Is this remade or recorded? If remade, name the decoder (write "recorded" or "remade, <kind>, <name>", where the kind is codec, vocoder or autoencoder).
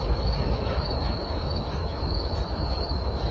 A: remade, autoencoder, DAC-VAE